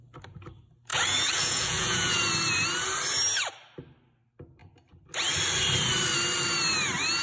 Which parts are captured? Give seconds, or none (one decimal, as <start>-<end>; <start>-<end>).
0.0-0.9; 2.2-7.2